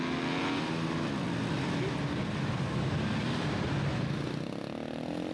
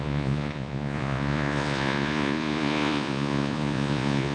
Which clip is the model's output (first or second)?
second